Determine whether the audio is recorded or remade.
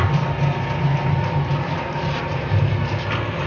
recorded